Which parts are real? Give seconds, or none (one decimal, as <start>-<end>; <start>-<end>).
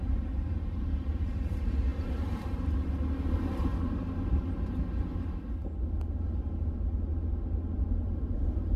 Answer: 3.7-6.1; 7.1-7.9